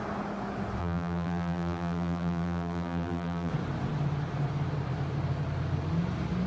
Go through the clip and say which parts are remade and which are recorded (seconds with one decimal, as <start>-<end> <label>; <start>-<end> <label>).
0.0-0.8 recorded; 0.8-3.5 remade; 3.5-6.5 recorded